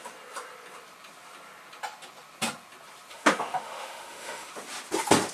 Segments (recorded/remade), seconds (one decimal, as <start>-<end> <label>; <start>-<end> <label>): 0.0-3.1 recorded; 3.1-4.5 remade; 4.5-5.3 recorded